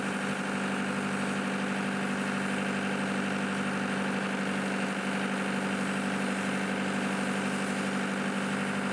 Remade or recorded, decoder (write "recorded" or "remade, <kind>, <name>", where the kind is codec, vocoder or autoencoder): recorded